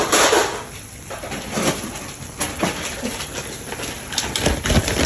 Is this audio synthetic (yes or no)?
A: no